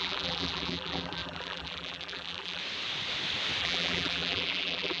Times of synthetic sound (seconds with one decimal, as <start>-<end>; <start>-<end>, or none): 0.0-2.6; 3.6-5.0